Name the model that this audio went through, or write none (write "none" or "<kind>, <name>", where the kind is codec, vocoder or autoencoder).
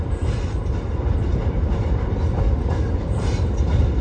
none